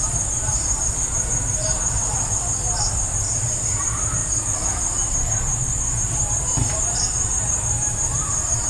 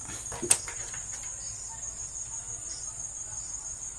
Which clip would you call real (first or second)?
second